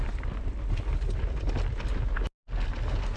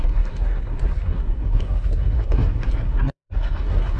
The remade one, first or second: second